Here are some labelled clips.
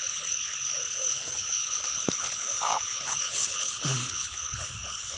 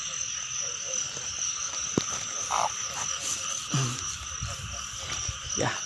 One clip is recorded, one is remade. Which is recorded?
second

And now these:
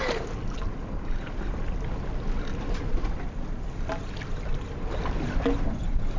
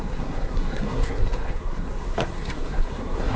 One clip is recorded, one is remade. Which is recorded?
first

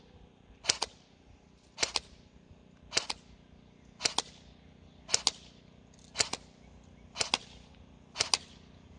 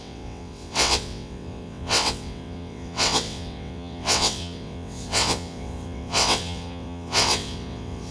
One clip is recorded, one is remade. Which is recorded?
first